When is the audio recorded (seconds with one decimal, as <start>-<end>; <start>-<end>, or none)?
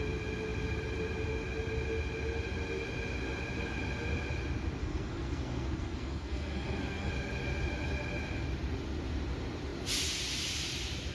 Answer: 0.0-4.8; 7.1-11.1